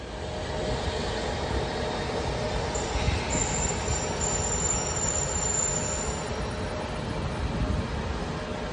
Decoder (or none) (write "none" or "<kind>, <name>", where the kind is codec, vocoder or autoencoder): none